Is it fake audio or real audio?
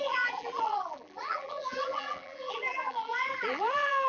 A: fake